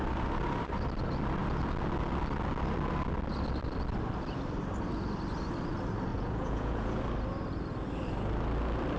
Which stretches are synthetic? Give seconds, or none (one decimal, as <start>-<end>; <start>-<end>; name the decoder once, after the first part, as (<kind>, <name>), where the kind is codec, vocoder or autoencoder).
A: 6.1-7.0 (vocoder, Vocos)